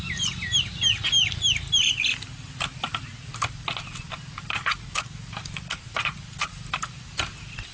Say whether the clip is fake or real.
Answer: real